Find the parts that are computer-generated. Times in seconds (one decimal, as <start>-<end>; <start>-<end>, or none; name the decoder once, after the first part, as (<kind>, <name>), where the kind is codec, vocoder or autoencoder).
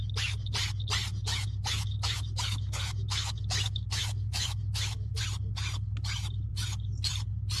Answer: 1.1-5.2 (autoencoder, DAC-VAE)